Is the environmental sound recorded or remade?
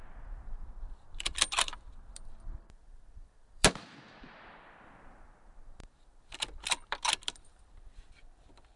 remade